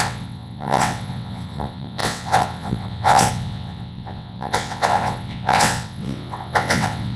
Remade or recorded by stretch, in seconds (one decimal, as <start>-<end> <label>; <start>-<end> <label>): 0.0-7.2 remade